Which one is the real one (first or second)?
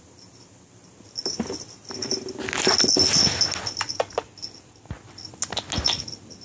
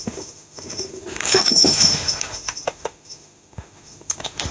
first